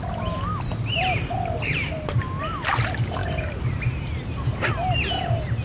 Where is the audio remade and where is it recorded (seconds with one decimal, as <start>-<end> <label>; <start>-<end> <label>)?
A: 0.0-5.6 recorded